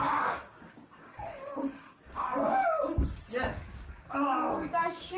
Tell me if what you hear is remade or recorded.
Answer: remade